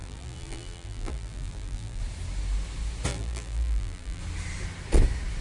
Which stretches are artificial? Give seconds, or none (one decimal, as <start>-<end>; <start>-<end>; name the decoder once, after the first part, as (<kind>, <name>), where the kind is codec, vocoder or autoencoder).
0.0-2.0 (vocoder, BigVGAN v2); 3.1-4.2